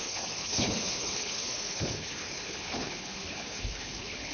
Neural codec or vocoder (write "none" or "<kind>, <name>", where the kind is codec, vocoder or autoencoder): codec, HILCodec